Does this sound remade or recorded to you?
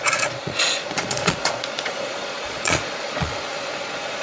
remade